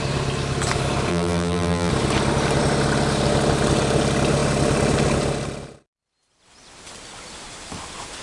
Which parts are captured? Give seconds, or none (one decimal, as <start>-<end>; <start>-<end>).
0.0-1.1; 1.9-8.2